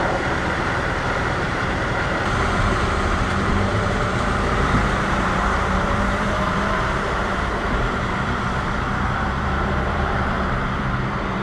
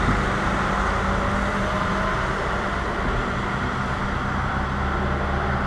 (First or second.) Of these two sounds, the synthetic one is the first